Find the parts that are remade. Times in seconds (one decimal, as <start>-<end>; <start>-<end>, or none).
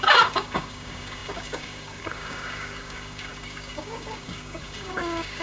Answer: 0.0-5.4